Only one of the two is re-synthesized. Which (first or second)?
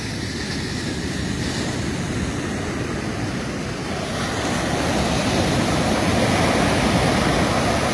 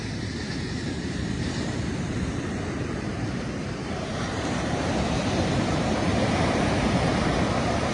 second